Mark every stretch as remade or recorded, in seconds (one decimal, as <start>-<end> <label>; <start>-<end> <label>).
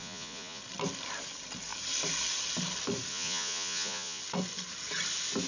0.0-0.6 remade; 0.6-3.1 recorded; 3.1-4.2 remade; 4.2-5.5 recorded